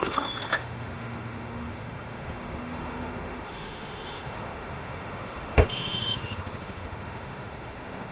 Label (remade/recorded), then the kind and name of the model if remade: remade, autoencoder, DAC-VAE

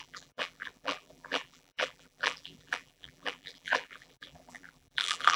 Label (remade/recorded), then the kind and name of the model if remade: remade, vocoder, BigVGAN v2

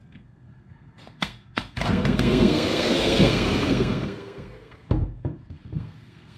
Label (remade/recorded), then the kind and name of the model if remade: remade, codec, SNAC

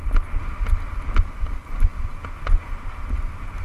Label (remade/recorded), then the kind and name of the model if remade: recorded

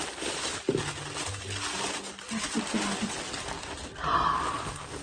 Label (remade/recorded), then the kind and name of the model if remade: recorded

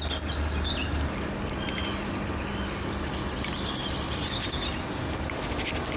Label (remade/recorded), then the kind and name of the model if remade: recorded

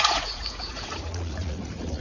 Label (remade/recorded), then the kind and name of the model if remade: remade, vocoder, Vocos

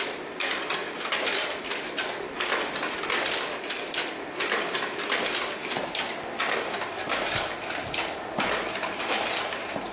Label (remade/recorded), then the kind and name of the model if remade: recorded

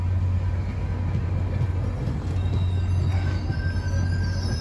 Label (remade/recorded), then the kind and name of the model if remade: recorded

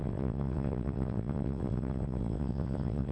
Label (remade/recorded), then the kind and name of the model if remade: remade, vocoder, WaveNeXt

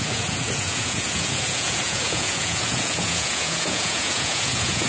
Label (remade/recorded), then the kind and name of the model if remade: remade, vocoder, Vocos